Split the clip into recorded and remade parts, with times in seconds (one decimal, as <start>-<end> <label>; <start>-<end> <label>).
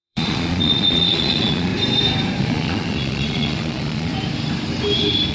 0.0-1.7 remade; 1.7-2.4 recorded; 2.4-4.1 remade; 4.1-5.3 recorded